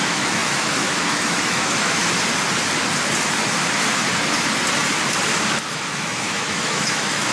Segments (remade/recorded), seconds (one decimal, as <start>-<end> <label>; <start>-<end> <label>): 0.0-2.0 remade; 2.0-5.7 recorded; 5.7-7.3 remade